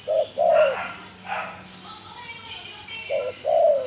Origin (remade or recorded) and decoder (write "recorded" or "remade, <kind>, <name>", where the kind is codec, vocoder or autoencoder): recorded